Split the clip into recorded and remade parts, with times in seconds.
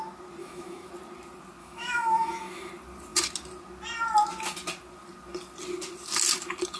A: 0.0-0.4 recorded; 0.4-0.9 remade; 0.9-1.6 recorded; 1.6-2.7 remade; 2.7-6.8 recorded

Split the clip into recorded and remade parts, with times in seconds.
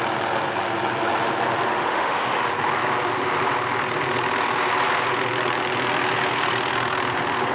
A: 0.0-1.7 recorded; 1.7-2.4 remade; 2.4-7.5 recorded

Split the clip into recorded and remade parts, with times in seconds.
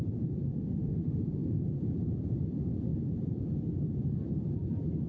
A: 0.0-0.5 recorded; 0.5-1.6 remade; 1.6-5.1 recorded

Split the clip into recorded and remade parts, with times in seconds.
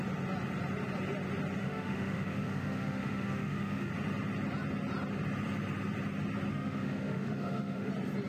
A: 0.0-1.6 recorded; 1.6-3.9 remade; 3.9-6.5 recorded; 6.5-7.9 remade; 7.9-8.3 recorded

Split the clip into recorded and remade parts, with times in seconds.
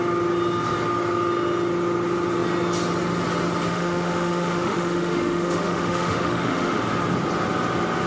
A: 0.0-3.7 recorded; 3.7-6.8 remade; 6.8-8.1 recorded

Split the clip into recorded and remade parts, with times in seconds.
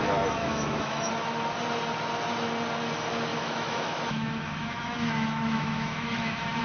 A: 0.0-0.4 recorded; 0.4-1.1 remade; 1.1-3.3 recorded; 3.3-6.6 remade